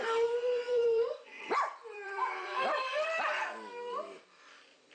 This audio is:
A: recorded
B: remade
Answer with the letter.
B